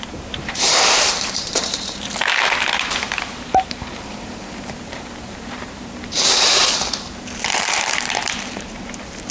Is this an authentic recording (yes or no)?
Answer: no